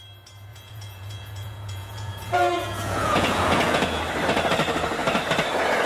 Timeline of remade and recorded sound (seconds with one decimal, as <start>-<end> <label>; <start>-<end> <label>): 0.0-0.5 recorded; 0.5-4.0 remade; 4.0-5.9 recorded